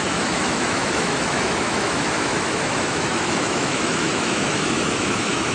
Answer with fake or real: fake